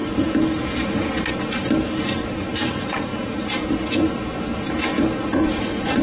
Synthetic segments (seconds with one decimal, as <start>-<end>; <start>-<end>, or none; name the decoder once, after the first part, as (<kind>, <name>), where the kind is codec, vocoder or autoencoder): 0.0-1.1 (vocoder, Vocos); 2.7-6.0